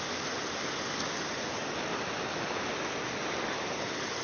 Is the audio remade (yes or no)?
no